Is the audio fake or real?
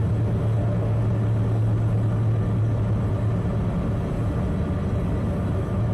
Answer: real